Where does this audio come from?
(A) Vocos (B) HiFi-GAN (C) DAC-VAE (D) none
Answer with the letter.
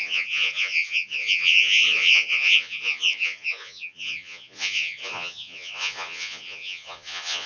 A